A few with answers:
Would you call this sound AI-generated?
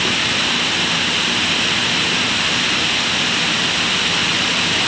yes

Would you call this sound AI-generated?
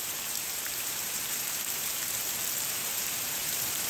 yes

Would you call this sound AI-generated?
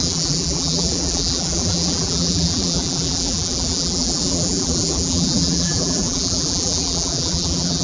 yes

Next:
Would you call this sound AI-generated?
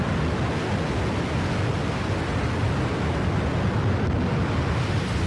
no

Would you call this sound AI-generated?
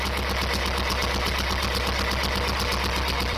no